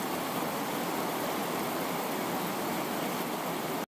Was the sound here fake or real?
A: real